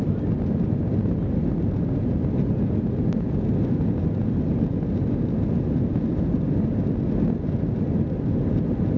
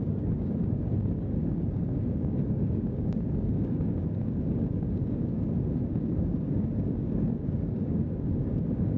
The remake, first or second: second